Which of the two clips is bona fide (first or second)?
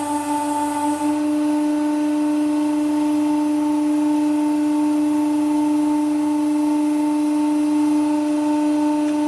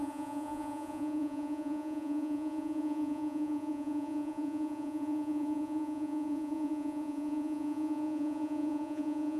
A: first